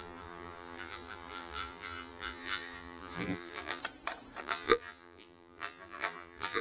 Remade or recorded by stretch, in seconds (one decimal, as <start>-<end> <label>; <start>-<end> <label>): 0.0-3.8 remade; 3.8-4.4 recorded; 4.4-6.6 remade